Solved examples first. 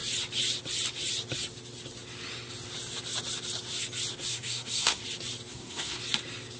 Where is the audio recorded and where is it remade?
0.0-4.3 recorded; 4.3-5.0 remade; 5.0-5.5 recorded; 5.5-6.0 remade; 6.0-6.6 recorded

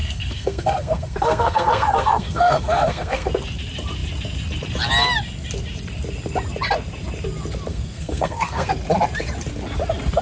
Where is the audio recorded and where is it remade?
0.0-3.3 remade; 3.3-7.7 recorded; 7.7-8.7 remade; 8.7-10.2 recorded

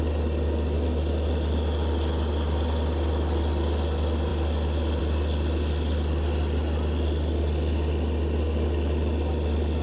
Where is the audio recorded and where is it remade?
0.0-9.8 recorded

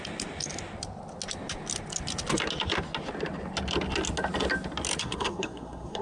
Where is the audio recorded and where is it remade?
0.0-5.0 recorded; 5.0-6.0 remade

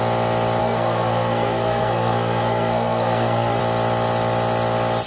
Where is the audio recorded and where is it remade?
0.0-0.6 recorded; 0.6-3.6 remade; 3.6-5.1 recorded

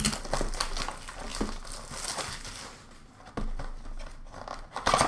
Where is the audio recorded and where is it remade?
0.0-5.1 recorded